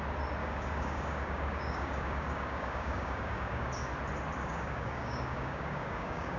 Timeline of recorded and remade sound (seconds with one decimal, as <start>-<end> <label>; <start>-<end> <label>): 0.0-0.4 recorded; 0.4-3.7 remade; 3.7-4.4 recorded; 4.4-6.4 remade